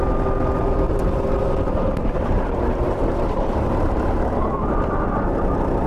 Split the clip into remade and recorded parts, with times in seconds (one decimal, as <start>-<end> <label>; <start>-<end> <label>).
0.0-0.9 recorded; 0.9-4.3 remade; 4.3-5.9 recorded